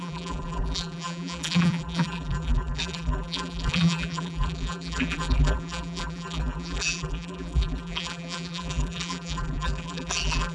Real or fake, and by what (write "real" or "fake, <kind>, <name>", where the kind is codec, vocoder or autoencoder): fake, vocoder, BigVGAN v2